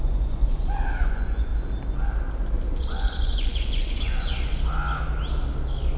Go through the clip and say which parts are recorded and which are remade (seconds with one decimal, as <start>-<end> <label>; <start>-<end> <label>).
0.0-1.5 remade; 1.5-2.8 recorded; 2.8-4.5 remade; 4.5-6.0 recorded